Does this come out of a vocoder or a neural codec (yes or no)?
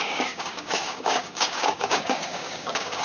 yes